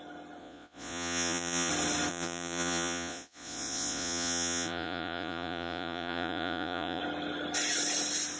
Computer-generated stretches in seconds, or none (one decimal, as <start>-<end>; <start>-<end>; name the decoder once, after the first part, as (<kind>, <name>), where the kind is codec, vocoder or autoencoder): 0.4-1.7 (vocoder, Vocos); 2.1-7.0